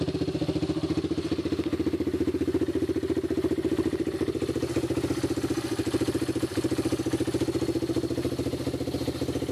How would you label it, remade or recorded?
recorded